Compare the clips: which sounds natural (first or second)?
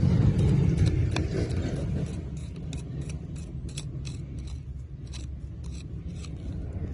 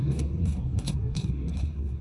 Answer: first